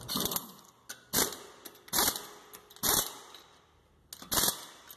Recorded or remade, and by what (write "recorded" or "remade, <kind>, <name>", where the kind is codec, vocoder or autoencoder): recorded